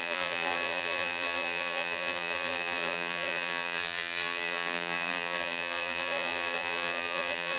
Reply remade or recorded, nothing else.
remade